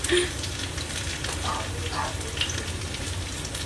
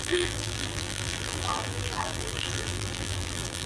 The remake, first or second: second